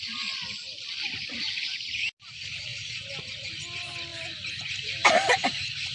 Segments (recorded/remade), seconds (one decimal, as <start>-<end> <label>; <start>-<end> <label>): 0.0-5.9 recorded